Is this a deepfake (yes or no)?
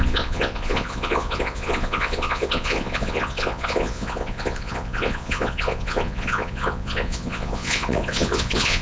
yes